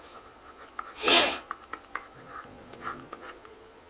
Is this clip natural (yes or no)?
no